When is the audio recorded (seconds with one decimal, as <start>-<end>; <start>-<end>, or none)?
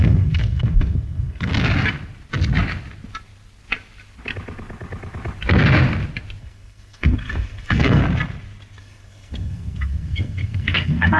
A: 1.5-6.4; 8.0-8.8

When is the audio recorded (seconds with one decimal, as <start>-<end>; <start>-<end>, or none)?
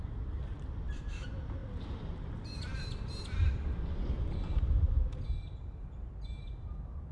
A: 0.0-7.1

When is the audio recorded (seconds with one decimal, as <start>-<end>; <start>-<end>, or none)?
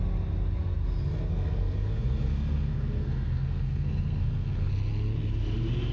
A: 0.0-1.3; 4.7-5.9